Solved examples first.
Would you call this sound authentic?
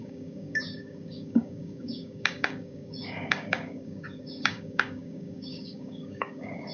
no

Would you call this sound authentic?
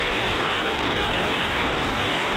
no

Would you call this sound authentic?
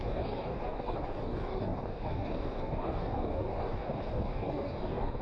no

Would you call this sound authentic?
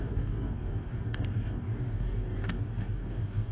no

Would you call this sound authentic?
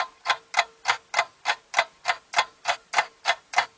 yes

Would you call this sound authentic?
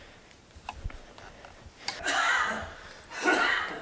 yes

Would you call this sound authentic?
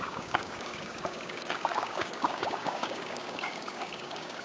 no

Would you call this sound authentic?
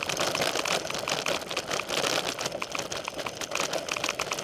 yes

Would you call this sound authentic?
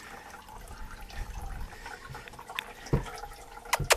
yes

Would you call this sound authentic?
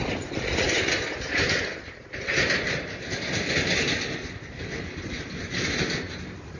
yes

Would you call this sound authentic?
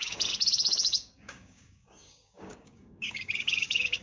no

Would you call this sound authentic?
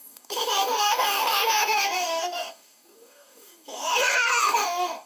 no